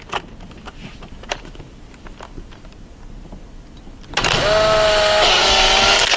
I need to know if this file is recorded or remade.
recorded